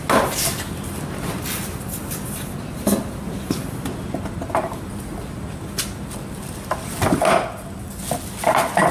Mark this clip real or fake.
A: real